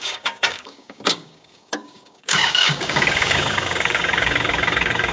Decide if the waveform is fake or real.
fake